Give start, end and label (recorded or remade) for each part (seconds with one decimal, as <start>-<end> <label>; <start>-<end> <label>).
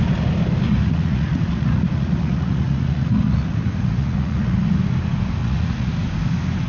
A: 0.0-0.8 recorded; 0.8-4.8 remade; 4.8-5.4 recorded; 5.4-5.9 remade; 5.9-6.7 recorded